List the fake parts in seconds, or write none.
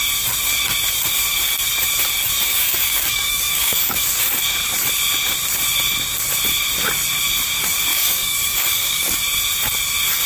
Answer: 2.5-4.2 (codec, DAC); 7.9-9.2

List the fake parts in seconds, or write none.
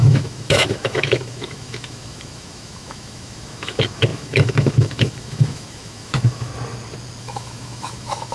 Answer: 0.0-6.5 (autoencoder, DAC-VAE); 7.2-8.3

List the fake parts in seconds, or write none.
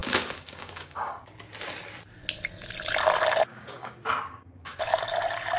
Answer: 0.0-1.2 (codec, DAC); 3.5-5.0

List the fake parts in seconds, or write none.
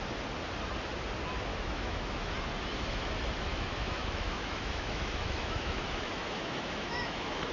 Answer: 1.5-2.3 (autoencoder, DAC-VAE); 3.5-7.5